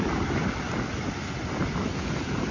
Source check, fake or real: real